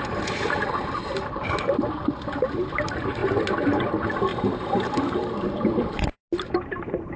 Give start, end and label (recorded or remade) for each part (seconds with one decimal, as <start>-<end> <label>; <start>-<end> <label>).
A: 0.0-4.3 recorded; 4.3-6.2 remade; 6.2-7.2 recorded

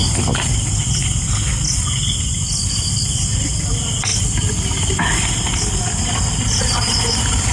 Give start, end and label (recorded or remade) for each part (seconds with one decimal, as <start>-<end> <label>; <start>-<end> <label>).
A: 0.0-7.5 recorded

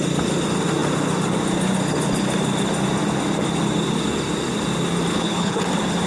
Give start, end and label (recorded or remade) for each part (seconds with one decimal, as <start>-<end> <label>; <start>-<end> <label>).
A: 0.0-5.1 recorded; 5.1-5.6 remade; 5.6-6.1 recorded

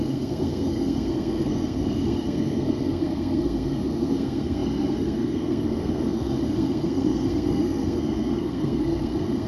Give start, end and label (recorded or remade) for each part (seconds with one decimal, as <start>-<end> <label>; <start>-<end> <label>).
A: 0.0-9.5 remade

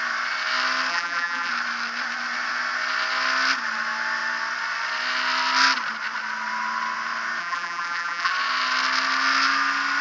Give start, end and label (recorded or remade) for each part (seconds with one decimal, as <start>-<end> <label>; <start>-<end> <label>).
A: 0.0-0.9 recorded; 0.9-1.5 remade; 1.5-7.4 recorded; 7.4-8.3 remade; 8.3-10.0 recorded

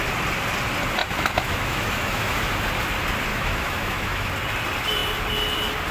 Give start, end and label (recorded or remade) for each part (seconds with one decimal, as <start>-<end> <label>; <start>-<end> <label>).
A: 0.0-1.0 recorded; 1.0-2.5 remade; 2.5-3.3 recorded; 3.3-4.3 remade; 4.3-5.9 recorded

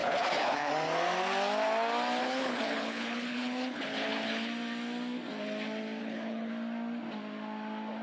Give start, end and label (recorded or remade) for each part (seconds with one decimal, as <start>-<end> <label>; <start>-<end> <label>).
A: 0.0-0.7 remade; 0.7-2.2 recorded; 2.2-4.5 remade; 4.5-6.0 recorded; 6.0-6.5 remade; 6.5-8.0 recorded

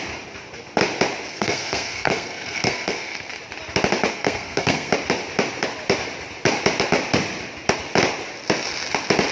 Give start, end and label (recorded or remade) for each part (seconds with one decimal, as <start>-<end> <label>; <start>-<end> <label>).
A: 0.0-1.3 recorded; 1.3-3.3 remade; 3.3-4.1 recorded; 4.1-4.9 remade; 4.9-9.3 recorded